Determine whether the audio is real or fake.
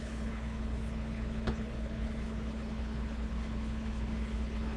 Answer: fake